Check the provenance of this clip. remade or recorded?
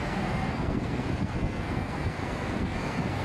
remade